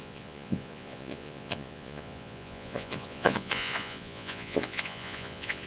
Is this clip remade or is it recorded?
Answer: remade